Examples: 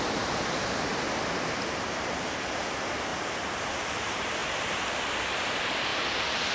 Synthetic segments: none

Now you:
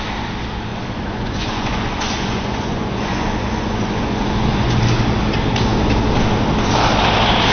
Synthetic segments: 0.7-4.8 (vocoder, Vocos)

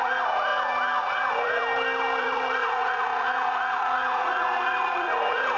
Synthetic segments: 0.0-0.5 (vocoder, Vocos); 1.0-1.6; 2.2-5.6

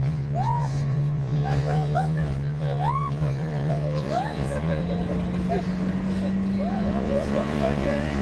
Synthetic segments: 0.0-4.8 (vocoder, Vocos); 6.7-8.2

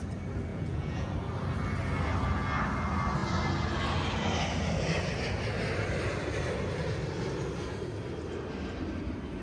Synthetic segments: 0.5-1.1 (vocoder, Vocos)

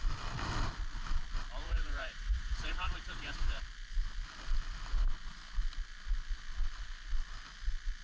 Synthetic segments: 1.6-3.6 (vocoder, Vocos)

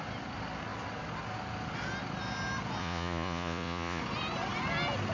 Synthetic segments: 2.8-4.0 (vocoder, Vocos)

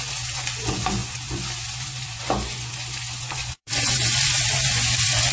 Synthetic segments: 0.0-5.3 (vocoder, Vocos)